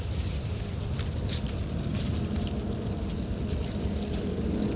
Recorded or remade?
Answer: recorded